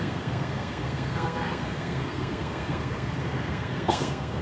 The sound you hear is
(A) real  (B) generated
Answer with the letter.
B